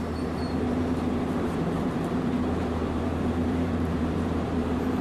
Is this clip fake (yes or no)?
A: yes